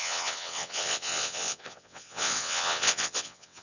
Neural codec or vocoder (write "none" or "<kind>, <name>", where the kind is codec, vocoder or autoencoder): vocoder, WaveNeXt